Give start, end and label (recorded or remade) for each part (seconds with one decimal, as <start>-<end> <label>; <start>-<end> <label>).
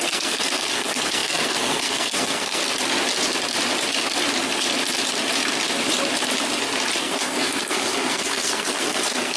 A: 0.0-2.6 remade; 2.6-7.0 recorded; 7.0-9.4 remade